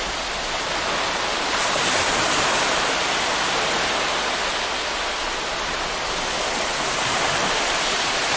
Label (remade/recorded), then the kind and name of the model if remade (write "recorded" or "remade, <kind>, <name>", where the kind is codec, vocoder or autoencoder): recorded